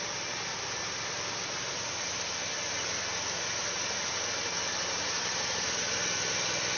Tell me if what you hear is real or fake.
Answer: real